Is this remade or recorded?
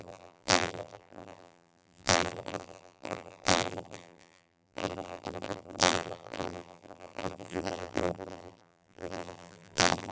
remade